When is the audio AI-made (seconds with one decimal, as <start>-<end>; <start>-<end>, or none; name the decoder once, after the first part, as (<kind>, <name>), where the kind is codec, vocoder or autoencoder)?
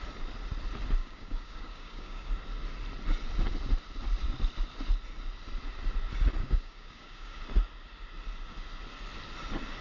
1.0-2.3 (codec, DAC); 6.4-7.4